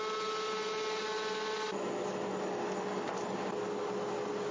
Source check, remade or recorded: recorded